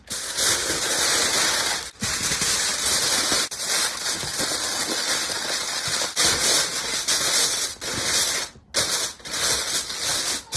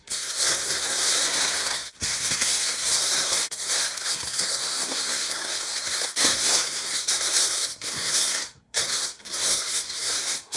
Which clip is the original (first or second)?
first